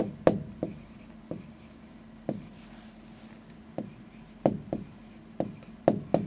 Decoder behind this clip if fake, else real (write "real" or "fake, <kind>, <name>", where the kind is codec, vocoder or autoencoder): real